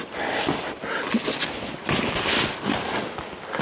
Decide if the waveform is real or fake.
real